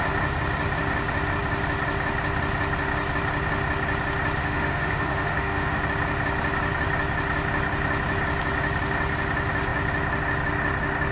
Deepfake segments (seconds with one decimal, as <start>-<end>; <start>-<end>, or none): 4.4-5.8